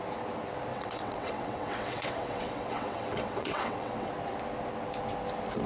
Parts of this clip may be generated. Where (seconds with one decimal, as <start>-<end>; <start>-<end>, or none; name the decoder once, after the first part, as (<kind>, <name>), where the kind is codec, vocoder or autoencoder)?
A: 0.7-4.1 (vocoder, WaveNeXt)